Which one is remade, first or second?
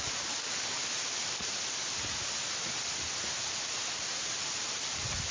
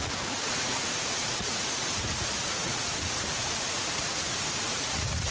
second